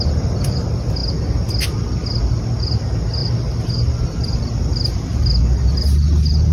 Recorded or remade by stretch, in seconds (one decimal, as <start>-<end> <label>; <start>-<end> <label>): 0.0-6.5 recorded